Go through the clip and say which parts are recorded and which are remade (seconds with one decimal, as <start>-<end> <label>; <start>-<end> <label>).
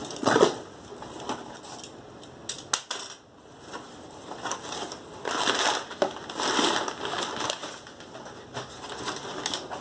0.0-0.6 remade; 0.6-9.8 recorded